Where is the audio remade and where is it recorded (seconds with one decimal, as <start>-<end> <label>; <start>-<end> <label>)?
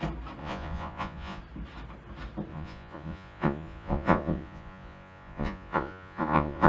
0.0-0.4 recorded; 0.4-1.4 remade; 1.4-2.5 recorded; 2.5-6.7 remade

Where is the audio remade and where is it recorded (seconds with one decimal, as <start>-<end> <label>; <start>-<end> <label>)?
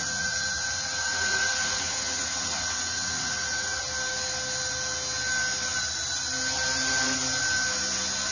0.0-3.8 remade; 3.8-8.3 recorded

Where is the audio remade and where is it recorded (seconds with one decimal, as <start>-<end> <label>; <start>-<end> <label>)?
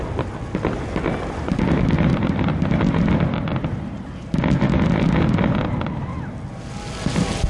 0.0-7.5 recorded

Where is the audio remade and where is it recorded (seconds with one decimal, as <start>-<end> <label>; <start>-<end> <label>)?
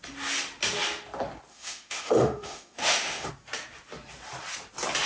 0.0-1.5 recorded; 1.5-3.3 remade; 3.3-5.1 recorded